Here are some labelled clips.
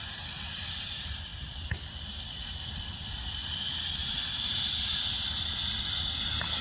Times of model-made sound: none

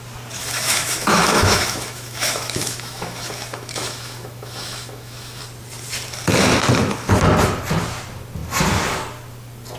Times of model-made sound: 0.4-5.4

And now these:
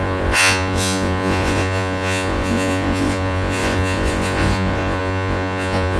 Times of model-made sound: 0.0-6.0

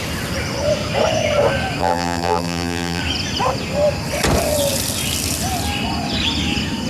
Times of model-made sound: 1.8-3.0

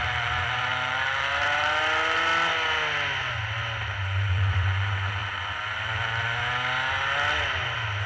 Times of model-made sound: 0.0-2.3; 4.0-5.2; 7.6-8.1